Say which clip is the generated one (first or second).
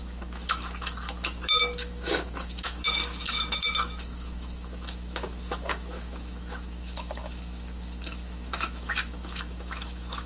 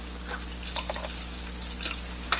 first